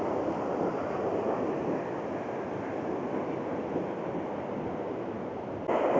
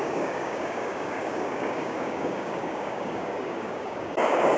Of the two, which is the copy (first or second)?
second